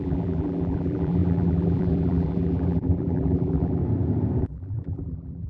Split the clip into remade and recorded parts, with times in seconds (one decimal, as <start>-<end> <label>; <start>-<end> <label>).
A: 0.0-3.8 remade; 3.8-4.4 recorded; 4.4-5.5 remade